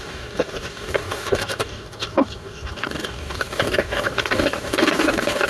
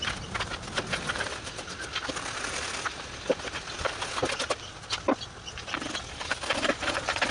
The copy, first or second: first